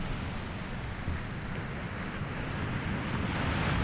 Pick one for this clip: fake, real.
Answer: real